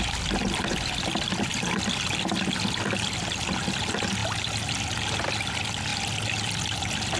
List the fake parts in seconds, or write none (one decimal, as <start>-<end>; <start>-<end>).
none